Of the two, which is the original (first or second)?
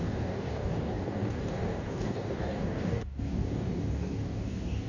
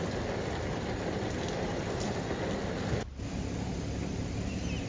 second